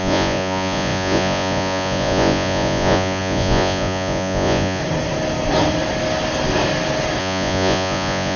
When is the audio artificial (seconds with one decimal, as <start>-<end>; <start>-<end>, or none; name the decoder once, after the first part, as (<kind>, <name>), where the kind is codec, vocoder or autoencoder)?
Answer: 0.0-4.8 (vocoder, Vocos); 7.2-8.4